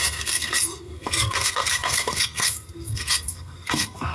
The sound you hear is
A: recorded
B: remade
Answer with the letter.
B